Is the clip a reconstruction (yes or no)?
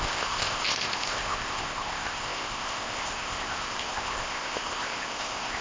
yes